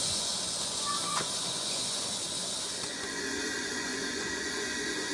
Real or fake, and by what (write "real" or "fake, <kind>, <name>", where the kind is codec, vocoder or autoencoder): fake, vocoder, Vocos